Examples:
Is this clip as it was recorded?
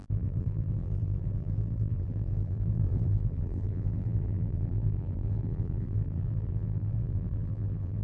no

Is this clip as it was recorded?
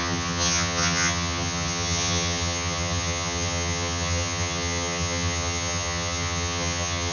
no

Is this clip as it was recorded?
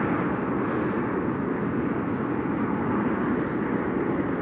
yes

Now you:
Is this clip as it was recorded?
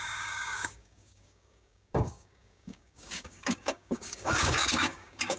no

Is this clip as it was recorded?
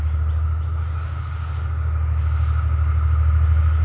yes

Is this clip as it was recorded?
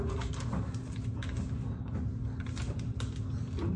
yes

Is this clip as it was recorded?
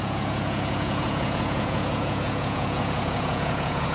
no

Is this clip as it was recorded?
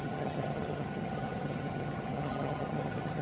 no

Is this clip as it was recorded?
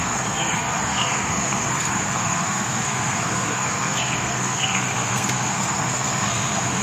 no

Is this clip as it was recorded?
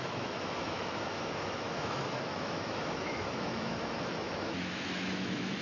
no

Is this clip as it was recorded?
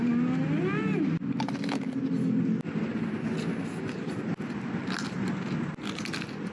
yes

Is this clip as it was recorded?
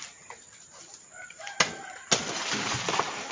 yes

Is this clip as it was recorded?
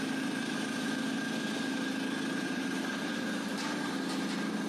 yes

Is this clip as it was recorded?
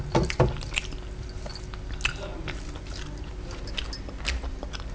yes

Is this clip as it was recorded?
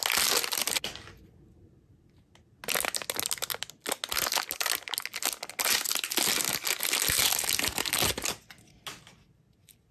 yes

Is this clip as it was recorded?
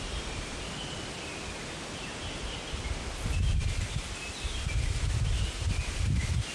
yes